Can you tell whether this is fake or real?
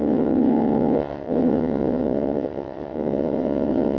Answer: fake